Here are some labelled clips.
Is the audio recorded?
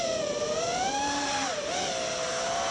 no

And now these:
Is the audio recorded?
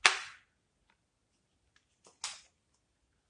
yes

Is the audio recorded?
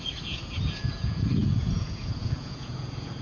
no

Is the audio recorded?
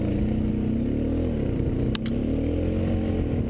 yes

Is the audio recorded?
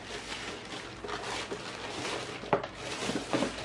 yes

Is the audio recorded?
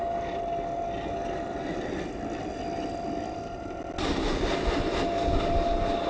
yes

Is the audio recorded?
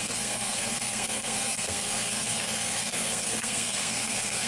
no